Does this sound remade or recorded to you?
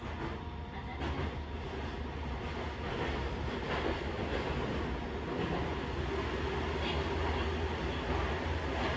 recorded